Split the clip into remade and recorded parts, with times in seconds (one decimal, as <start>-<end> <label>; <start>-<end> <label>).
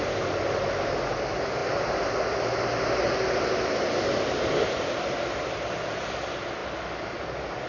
0.0-7.7 recorded